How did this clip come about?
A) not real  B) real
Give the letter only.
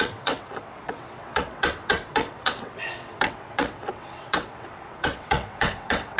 A